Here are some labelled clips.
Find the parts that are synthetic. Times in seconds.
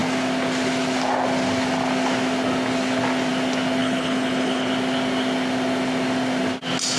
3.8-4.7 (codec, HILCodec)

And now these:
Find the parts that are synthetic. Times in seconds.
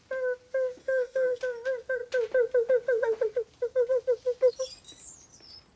0.8-1.4 (codec, DAC)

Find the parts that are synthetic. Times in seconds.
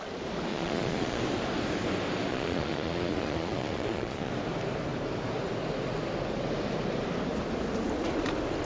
0.5-1.2 (vocoder, Vocos); 2.3-4.3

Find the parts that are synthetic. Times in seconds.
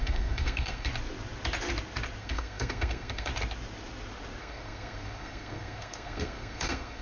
0.0-0.9 (codec, SNAC); 2.2-3.3; 4.4-7.0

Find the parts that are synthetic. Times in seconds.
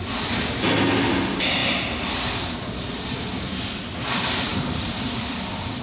4.5-5.8 (vocoder, BigVGAN v2)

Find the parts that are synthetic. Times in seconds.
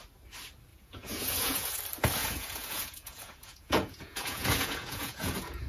0.7-1.8 (vocoder, Vocos); 2.2-5.7